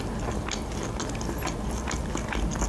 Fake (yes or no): no